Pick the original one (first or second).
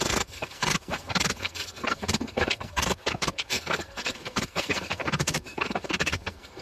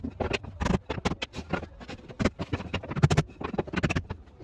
second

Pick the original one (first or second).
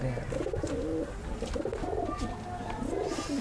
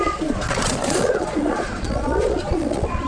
first